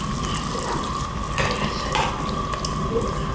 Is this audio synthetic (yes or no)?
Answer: no